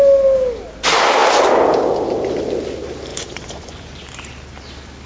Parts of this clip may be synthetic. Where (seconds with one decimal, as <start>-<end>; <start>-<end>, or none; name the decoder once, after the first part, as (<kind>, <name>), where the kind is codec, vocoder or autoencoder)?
3.1-4.0 (vocoder, Vocos)